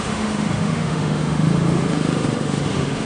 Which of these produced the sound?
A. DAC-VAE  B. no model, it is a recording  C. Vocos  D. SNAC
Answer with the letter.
A